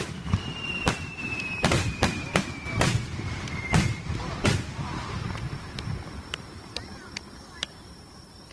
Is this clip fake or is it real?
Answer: fake